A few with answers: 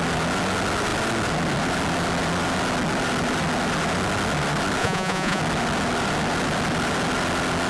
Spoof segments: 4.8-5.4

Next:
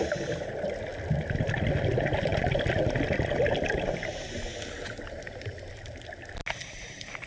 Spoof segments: none